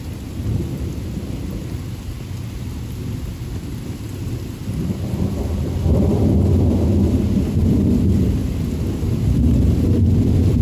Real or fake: real